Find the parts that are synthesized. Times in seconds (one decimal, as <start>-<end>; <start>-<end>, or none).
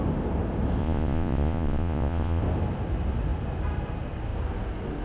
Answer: 0.8-2.4